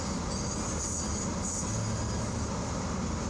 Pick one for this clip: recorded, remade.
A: recorded